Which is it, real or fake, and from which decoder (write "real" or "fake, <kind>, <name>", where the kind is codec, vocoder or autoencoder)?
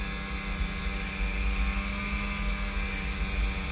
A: real